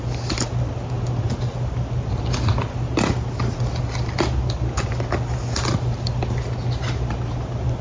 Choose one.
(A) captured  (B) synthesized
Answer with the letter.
A